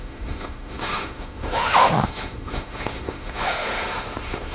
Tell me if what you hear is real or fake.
fake